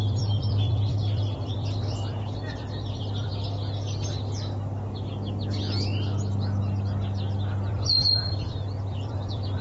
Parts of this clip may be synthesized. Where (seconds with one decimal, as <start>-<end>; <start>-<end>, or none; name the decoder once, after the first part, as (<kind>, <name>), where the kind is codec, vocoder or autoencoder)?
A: 0.0-3.3 (vocoder, BigVGAN v2); 7.7-9.6